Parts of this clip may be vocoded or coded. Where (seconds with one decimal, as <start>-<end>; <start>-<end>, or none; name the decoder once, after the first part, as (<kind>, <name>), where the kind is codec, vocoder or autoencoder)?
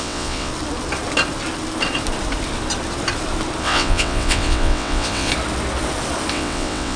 0.0-0.5 (vocoder, WaveNeXt); 3.6-5.3; 6.3-7.0